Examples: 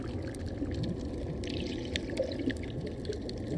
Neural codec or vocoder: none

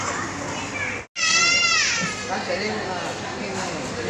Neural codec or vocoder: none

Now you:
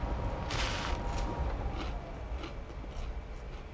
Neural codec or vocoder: none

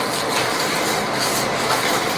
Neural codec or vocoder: none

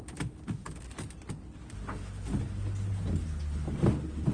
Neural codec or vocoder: none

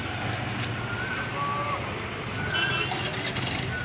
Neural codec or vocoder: none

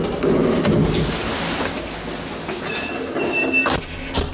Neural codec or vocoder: none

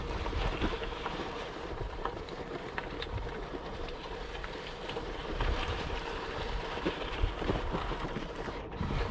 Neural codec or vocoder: vocoder, BigVGAN v2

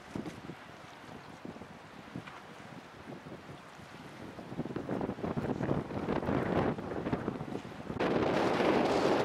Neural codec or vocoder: none